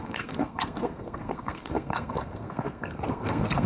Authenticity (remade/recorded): remade